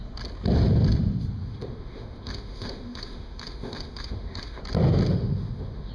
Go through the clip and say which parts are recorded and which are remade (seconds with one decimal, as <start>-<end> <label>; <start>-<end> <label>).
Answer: 0.0-1.4 recorded; 1.4-4.6 remade; 4.6-5.1 recorded; 5.1-5.9 remade